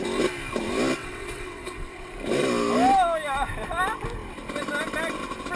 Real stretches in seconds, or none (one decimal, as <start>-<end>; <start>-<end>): 0.0-1.0; 2.1-5.6